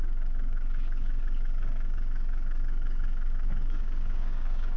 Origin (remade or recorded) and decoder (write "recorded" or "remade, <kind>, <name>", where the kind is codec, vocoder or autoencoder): remade, codec, DAC